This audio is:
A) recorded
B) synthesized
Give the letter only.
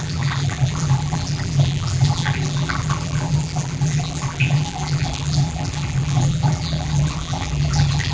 B